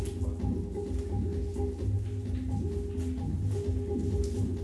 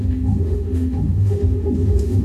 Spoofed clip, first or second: second